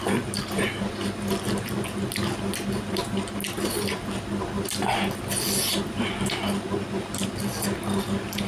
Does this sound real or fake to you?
real